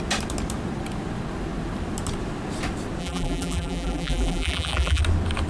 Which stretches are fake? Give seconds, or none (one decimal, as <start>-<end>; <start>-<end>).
3.0-5.0